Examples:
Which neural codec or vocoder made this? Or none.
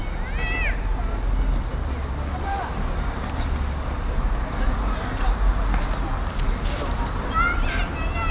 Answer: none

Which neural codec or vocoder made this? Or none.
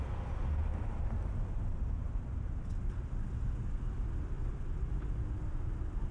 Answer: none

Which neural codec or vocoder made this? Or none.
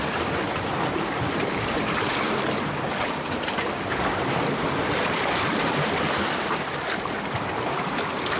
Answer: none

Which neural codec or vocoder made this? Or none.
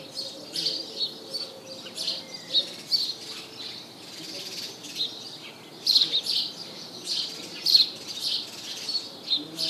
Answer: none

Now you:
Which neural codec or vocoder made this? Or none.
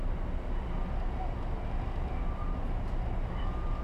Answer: none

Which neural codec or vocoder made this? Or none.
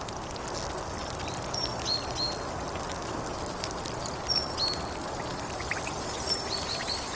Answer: none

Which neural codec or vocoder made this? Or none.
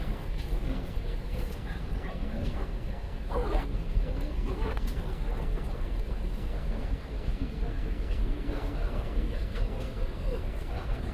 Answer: codec, SNAC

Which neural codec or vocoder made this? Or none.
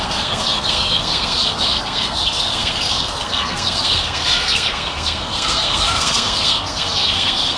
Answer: codec, SNAC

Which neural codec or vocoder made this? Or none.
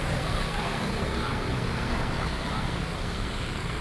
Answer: codec, SNAC